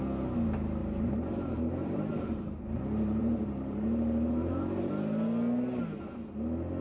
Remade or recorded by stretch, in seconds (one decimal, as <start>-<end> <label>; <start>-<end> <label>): 0.0-0.8 recorded; 0.8-4.9 remade; 4.9-6.8 recorded